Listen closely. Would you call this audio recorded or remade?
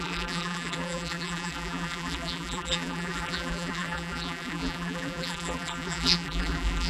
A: remade